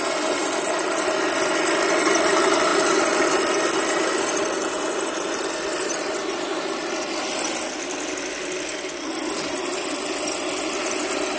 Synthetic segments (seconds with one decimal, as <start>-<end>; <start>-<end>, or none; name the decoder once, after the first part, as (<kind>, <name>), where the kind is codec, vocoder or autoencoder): none